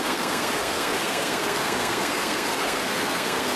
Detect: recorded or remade remade